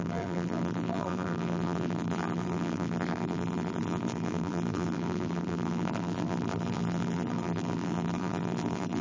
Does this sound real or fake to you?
fake